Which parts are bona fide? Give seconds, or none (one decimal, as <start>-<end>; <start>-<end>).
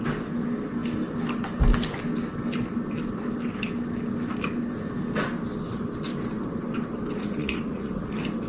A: 0.0-7.4; 8.1-8.5